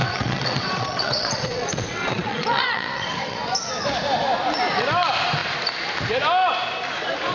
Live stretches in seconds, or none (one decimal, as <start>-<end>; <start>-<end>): 3.4-7.3